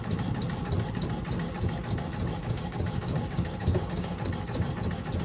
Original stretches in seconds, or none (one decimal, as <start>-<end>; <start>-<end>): 0.0-2.4; 4.1-5.2